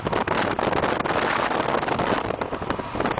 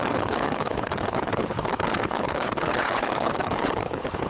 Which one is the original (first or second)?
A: first